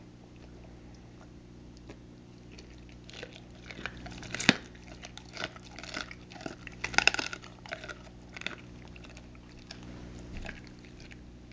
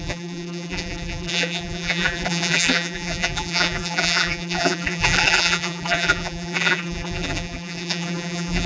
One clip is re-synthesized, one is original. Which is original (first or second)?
first